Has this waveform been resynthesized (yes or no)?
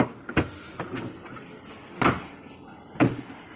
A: no